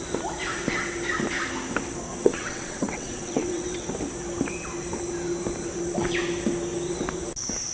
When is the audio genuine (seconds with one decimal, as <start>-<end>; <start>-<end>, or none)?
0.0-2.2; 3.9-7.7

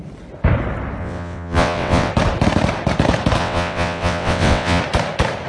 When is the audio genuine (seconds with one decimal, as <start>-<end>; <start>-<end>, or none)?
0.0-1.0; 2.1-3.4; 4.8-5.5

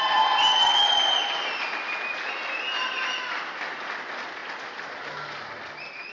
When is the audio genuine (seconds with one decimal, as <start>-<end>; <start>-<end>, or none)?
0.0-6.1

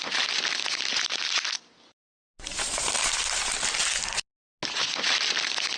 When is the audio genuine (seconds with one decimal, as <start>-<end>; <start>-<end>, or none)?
0.0-5.8